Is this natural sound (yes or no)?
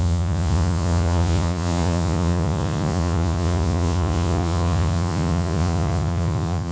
no